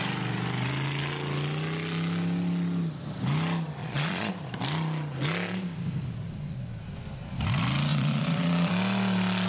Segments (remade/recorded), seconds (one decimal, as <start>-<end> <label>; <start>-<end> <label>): 0.0-3.8 recorded; 3.8-4.3 remade; 4.3-7.9 recorded; 7.9-8.7 remade; 8.7-9.5 recorded

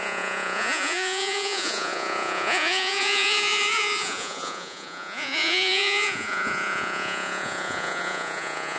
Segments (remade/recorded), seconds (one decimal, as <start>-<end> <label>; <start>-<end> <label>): 0.0-8.8 remade

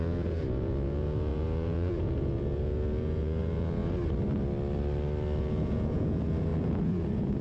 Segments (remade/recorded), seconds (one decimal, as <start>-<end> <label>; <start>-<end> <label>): 0.0-3.8 remade; 3.8-5.4 recorded; 5.4-7.4 remade

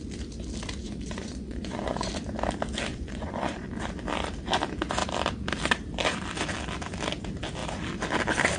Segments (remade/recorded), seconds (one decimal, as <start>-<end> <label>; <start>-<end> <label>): 0.0-0.8 recorded; 0.8-2.1 remade; 2.1-2.9 recorded; 2.9-3.7 remade; 3.7-8.6 recorded

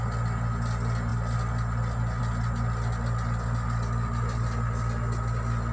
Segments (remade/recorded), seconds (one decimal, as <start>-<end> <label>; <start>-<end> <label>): 0.0-5.7 recorded

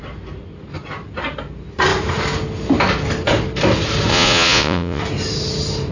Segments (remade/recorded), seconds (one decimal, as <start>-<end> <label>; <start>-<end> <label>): 0.0-4.1 recorded; 4.1-5.0 remade; 5.0-5.9 recorded

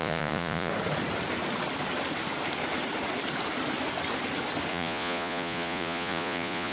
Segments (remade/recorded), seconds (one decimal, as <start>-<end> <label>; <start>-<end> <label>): 0.0-0.7 remade; 0.7-4.7 recorded; 4.7-6.7 remade